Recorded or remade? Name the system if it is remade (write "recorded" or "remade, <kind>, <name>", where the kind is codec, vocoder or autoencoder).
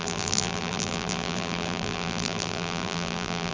remade, vocoder, BigVGAN v2